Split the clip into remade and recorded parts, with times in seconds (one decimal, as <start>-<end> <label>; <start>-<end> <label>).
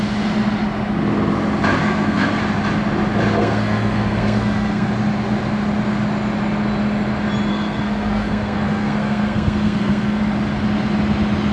0.0-1.8 recorded; 1.8-2.4 remade; 2.4-3.4 recorded; 3.4-4.9 remade; 4.9-7.5 recorded; 7.5-10.2 remade; 10.2-11.5 recorded